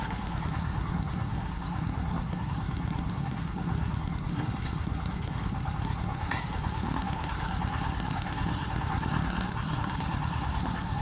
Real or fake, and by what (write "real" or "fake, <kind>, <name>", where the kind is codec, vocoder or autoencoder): fake, codec, SNAC